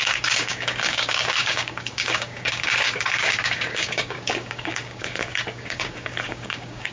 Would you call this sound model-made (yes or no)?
yes